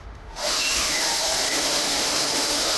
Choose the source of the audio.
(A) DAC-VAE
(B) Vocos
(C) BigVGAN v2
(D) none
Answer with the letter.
A